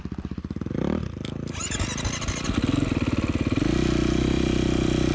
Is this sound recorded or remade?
recorded